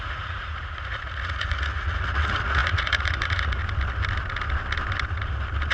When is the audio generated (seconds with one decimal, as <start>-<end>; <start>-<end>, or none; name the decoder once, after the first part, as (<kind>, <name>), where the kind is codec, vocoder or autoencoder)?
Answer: 0.0-3.6 (vocoder, Vocos)